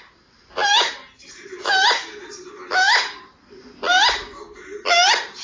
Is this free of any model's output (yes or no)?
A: yes